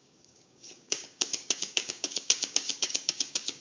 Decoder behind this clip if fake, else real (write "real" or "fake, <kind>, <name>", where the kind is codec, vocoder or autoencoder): fake, codec, DAC